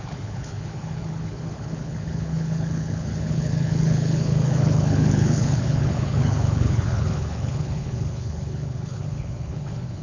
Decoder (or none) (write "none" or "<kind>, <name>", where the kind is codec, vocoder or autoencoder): codec, HILCodec